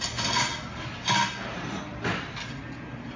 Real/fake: real